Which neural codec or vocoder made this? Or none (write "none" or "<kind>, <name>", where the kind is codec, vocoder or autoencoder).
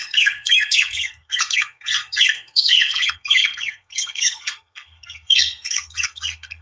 codec, SNAC